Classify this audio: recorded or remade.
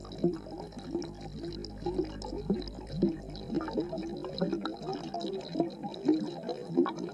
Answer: recorded